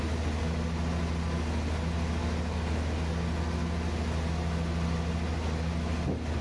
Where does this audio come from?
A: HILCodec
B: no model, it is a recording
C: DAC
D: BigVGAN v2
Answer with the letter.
B